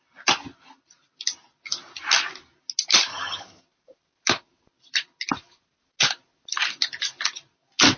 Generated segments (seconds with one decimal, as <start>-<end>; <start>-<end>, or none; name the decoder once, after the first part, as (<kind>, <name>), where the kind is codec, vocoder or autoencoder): 3.1-3.6 (vocoder, HiFi-GAN)